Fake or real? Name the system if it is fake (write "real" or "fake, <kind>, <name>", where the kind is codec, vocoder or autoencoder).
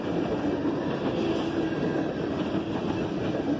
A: real